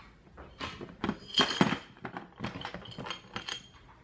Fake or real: real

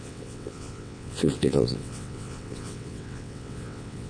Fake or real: fake